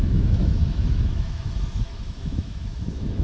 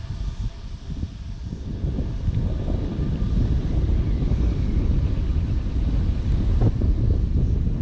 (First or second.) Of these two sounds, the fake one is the first